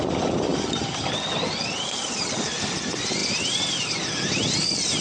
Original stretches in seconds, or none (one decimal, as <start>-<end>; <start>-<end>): 0.0-0.5; 2.8-3.2; 4.1-5.0